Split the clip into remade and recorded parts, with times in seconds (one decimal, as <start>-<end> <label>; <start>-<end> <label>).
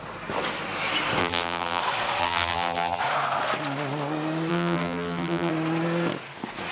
0.0-1.2 recorded; 1.2-1.8 remade; 1.8-2.2 recorded; 2.2-3.0 remade; 3.0-4.5 recorded; 4.5-5.5 remade; 5.5-6.7 recorded